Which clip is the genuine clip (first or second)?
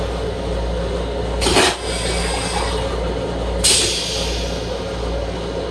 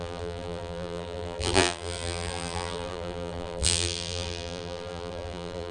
first